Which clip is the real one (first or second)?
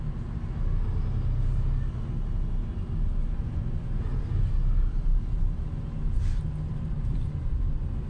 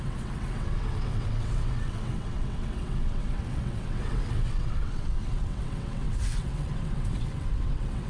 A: first